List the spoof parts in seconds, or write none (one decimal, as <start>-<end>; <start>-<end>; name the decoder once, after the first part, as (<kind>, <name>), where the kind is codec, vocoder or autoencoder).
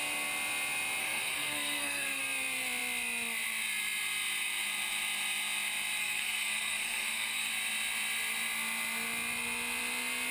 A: 1.0-2.2 (codec, SNAC); 6.0-7.5